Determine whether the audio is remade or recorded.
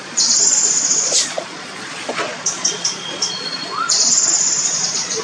remade